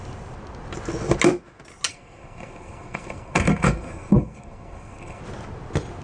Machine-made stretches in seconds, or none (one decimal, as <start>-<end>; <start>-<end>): 1.9-5.2